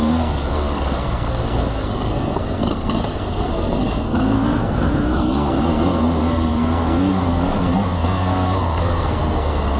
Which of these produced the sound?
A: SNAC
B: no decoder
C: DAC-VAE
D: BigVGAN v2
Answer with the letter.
A